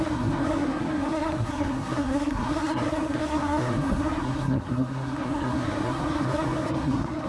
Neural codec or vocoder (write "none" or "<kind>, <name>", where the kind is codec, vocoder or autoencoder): codec, SNAC